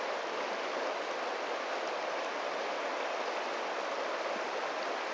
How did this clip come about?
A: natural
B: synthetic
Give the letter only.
A